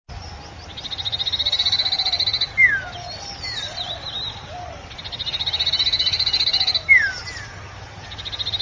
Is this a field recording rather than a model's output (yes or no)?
yes